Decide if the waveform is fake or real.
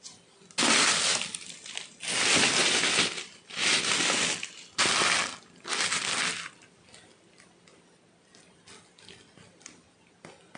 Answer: real